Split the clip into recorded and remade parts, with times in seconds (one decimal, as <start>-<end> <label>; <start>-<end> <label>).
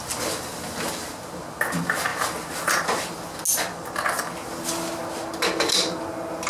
0.0-6.5 recorded